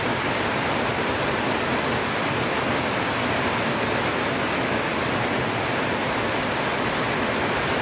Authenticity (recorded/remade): recorded